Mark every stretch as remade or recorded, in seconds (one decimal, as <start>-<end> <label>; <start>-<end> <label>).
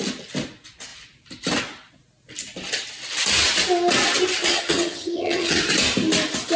0.0-4.5 recorded; 4.5-5.6 remade; 5.6-6.6 recorded